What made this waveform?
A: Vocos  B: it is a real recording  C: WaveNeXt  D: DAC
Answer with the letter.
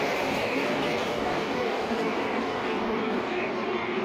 D